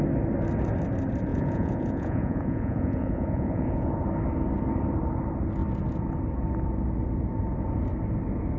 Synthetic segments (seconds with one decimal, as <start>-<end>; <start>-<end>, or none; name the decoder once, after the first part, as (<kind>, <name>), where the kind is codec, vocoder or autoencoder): 1.3-3.9 (vocoder, Vocos)